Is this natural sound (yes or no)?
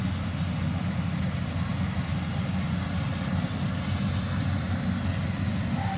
yes